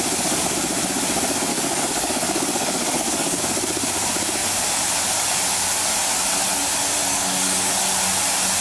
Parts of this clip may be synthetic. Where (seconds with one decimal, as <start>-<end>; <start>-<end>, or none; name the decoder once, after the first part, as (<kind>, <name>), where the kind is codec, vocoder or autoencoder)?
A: 1.5-3.4 (codec, DAC); 7.0-7.7